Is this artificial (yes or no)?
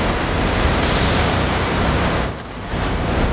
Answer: yes